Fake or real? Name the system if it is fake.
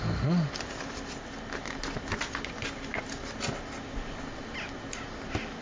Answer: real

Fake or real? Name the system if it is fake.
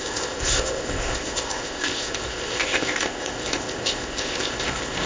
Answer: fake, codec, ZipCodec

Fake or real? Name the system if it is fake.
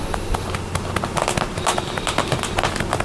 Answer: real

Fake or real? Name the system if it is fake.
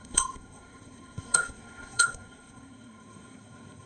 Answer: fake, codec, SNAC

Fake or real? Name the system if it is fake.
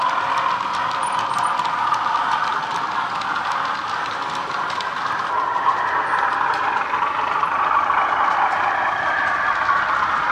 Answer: real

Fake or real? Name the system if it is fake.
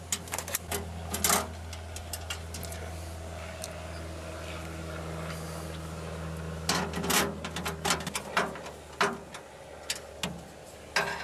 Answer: real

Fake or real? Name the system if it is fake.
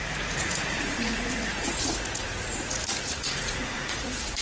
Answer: fake, vocoder, Vocos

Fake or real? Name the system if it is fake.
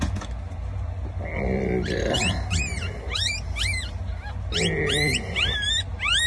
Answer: real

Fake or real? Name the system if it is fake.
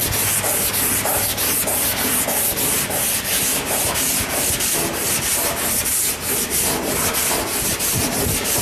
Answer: real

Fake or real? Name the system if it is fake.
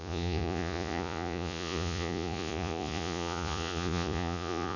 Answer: fake, vocoder, Vocos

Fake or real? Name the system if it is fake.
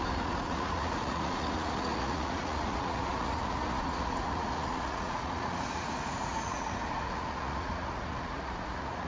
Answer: fake, vocoder, Vocos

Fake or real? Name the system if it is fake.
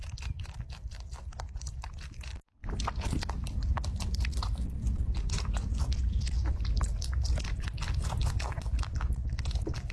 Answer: real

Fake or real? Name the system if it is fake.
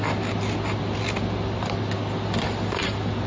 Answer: real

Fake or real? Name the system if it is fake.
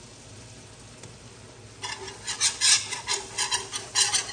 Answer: real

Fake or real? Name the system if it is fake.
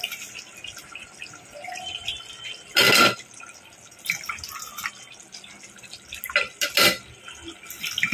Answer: real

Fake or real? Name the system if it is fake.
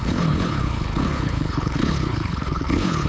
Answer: fake, codec, HILCodec